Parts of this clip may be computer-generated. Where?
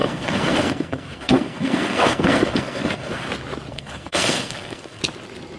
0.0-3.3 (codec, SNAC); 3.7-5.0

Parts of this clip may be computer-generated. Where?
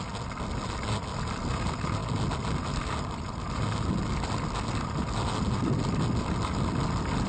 none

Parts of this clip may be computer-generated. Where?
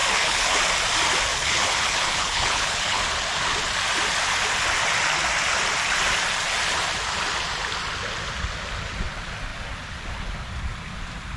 0.0-0.6 (codec, HILCodec); 1.3-3.0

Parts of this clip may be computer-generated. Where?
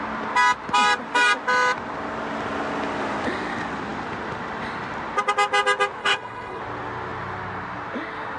6.0-6.6 (codec, HILCodec)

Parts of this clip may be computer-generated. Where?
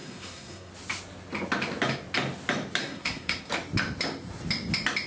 0.0-0.7 (codec, SNAC); 2.8-3.5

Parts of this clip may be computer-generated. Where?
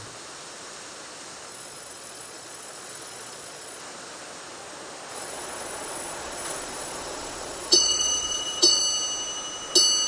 1.5-3.8 (vocoder, Vocos); 5.1-8.8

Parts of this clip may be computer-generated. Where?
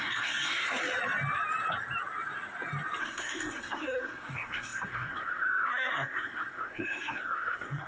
0.0-0.8 (codec, SNAC); 3.0-7.9